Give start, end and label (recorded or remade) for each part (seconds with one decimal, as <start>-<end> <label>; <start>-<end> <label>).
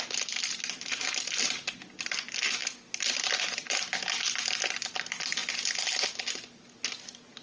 0.0-7.4 recorded